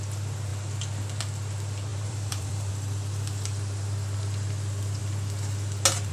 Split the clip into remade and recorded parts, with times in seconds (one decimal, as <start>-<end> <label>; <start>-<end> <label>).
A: 0.0-1.9 recorded; 1.9-2.7 remade; 2.7-6.1 recorded